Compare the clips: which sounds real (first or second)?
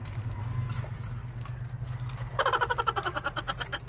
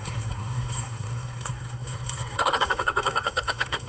first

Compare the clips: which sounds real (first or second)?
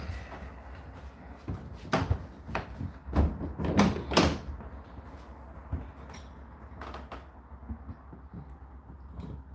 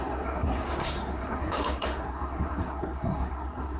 first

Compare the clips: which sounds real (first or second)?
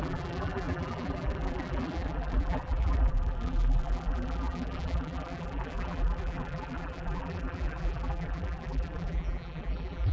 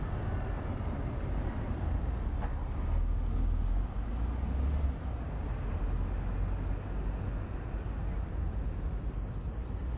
second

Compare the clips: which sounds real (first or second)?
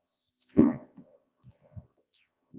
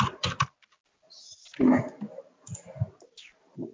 second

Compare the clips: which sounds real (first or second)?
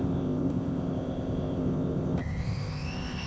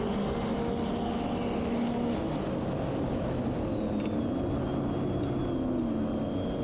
second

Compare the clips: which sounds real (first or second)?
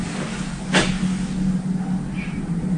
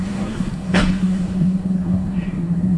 first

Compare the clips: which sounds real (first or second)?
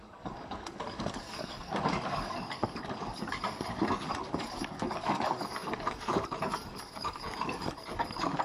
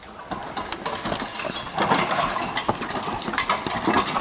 second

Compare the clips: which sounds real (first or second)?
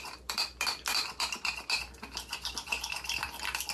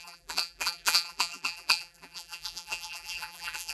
first